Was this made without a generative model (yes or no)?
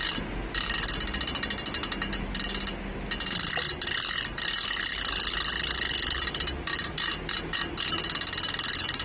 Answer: yes